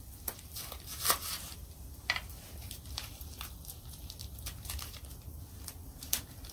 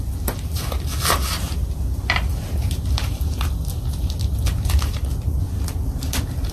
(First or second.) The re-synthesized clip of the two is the first